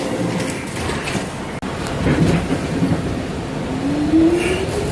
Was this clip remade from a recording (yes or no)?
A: no